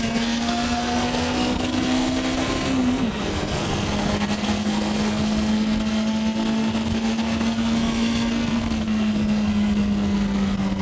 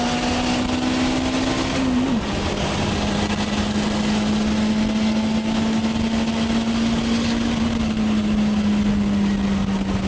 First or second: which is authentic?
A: second